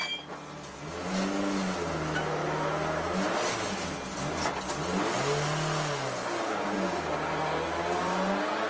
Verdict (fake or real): real